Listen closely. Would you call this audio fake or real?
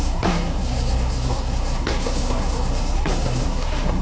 fake